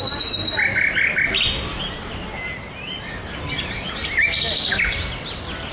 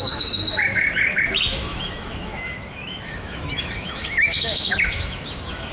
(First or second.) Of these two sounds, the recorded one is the first